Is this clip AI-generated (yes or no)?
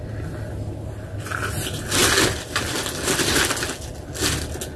no